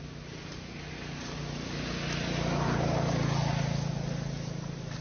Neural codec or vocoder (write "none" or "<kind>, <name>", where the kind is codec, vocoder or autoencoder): none